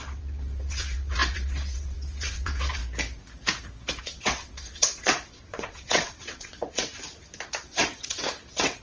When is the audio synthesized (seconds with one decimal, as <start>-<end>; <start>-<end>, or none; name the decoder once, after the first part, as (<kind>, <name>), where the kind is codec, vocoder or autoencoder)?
0.0-2.8 (vocoder, WaveNeXt); 4.0-6.9; 7.6-8.8